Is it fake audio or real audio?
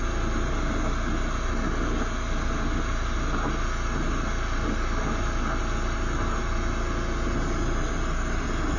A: real